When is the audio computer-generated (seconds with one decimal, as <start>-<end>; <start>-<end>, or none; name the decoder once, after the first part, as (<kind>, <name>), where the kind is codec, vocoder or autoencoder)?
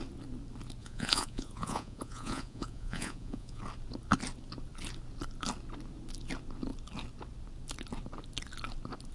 0.8-3.6 (vocoder, Vocos)